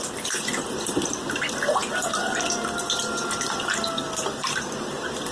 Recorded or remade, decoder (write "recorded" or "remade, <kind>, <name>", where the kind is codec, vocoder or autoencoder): recorded